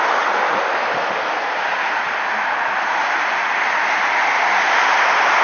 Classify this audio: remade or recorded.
recorded